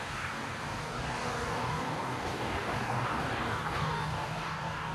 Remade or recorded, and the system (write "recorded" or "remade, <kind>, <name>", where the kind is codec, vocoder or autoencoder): remade, codec, DAC